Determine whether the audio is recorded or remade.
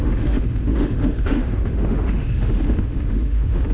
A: remade